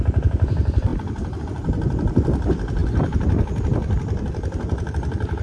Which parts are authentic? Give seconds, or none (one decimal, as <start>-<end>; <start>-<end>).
none